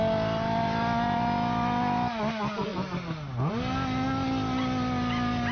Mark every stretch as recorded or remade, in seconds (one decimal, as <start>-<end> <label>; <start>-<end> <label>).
0.0-5.5 recorded